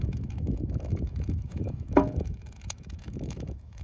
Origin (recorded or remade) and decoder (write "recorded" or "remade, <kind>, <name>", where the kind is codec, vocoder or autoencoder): remade, autoencoder, DAC-VAE